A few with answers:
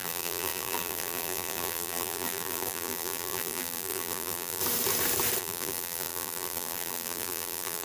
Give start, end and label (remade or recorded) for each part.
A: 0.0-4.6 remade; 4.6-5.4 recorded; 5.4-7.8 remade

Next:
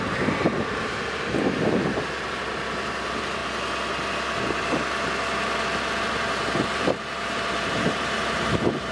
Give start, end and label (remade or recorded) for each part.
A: 0.0-3.4 remade; 3.4-6.7 recorded; 6.7-8.9 remade

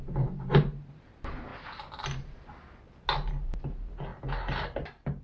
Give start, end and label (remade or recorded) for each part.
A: 0.0-1.5 remade; 1.5-3.4 recorded; 3.4-4.1 remade; 4.1-5.2 recorded

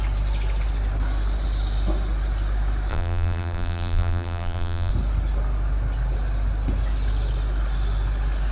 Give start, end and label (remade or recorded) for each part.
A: 0.0-2.9 recorded; 2.9-4.9 remade; 4.9-8.5 recorded